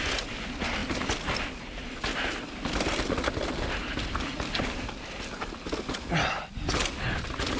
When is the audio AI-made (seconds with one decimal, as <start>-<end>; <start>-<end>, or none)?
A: none